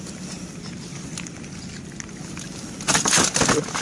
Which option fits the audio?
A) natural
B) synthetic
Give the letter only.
A